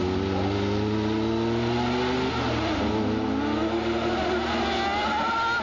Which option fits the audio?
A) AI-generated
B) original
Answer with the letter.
B